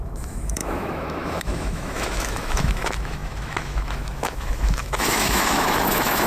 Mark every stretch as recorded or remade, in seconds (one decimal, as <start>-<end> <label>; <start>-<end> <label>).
0.0-6.3 remade